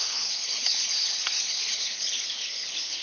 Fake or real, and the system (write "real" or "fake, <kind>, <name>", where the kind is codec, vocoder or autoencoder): fake, codec, HILCodec